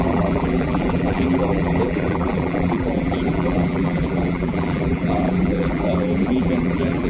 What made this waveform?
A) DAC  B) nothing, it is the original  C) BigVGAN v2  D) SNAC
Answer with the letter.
C